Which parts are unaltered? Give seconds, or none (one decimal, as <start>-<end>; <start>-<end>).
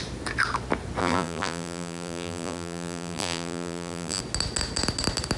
0.0-1.0; 4.2-5.4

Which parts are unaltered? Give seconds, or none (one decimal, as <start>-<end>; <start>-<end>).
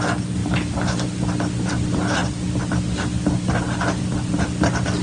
0.0-0.4; 1.0-5.0